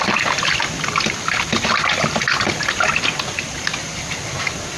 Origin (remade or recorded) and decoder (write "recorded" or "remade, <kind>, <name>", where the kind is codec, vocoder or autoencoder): recorded